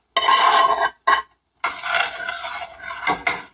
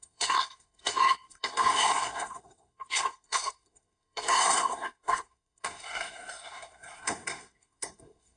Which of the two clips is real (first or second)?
first